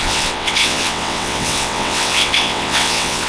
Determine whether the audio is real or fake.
fake